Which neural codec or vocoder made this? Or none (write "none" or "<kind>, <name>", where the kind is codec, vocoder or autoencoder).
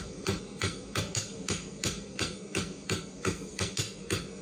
codec, SNAC